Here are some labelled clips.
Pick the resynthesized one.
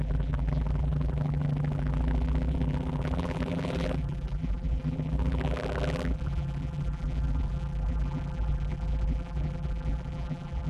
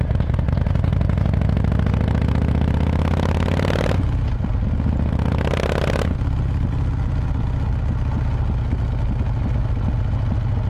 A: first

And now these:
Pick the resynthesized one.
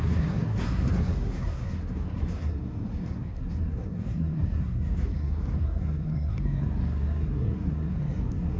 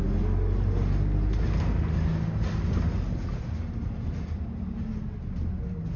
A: first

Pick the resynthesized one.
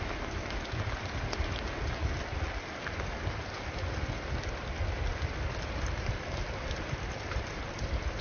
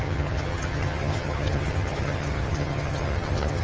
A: second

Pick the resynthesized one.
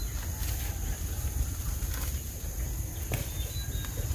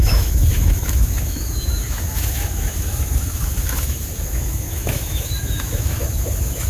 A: second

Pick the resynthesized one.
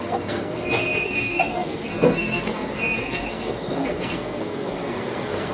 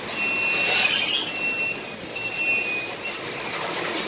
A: first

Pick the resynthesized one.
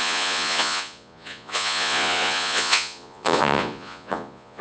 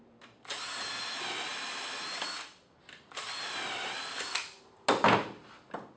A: first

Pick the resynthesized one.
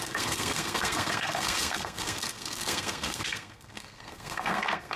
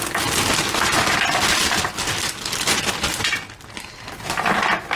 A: first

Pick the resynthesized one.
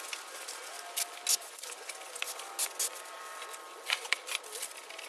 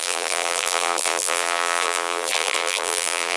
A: second